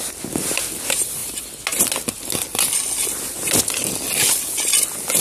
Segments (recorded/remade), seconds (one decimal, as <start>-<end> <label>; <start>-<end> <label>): 0.0-5.2 recorded